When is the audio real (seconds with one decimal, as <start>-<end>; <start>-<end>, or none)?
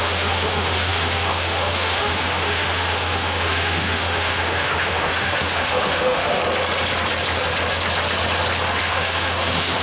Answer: 6.4-8.8